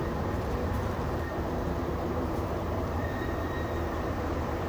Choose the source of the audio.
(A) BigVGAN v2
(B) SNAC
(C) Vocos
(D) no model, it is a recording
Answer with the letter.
A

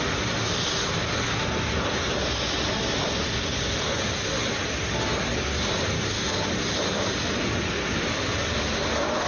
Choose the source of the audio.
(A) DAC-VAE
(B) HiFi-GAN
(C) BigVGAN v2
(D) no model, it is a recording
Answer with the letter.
D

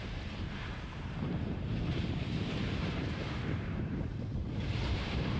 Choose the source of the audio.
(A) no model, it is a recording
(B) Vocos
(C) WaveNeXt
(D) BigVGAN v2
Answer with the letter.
D